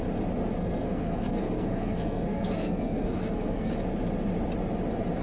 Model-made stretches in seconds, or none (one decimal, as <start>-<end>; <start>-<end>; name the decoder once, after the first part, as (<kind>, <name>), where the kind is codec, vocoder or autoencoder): 0.6-3.7 (codec, SNAC)